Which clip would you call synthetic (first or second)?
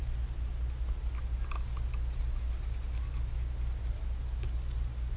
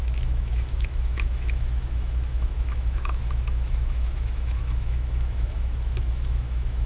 second